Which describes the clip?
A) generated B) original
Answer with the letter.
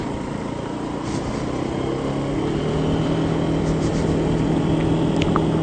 B